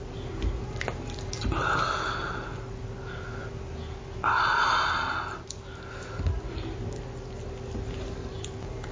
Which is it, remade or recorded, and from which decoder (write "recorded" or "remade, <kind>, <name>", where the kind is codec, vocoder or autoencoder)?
recorded